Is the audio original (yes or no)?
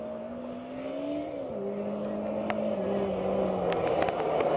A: yes